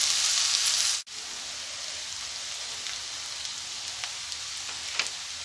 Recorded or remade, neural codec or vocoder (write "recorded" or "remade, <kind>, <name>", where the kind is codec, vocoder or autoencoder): recorded